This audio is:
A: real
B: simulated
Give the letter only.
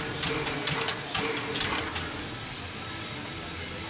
A